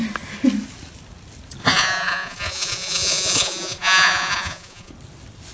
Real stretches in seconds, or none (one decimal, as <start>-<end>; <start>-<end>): 0.0-1.6; 4.9-5.5